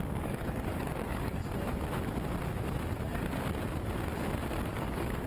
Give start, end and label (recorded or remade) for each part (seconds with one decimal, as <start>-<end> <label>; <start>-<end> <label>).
0.0-1.4 remade; 1.4-4.6 recorded; 4.6-5.3 remade